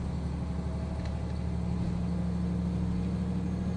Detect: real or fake real